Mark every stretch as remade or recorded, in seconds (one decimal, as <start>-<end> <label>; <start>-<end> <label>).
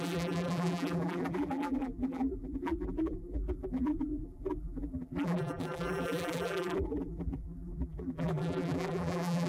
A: 0.0-9.5 remade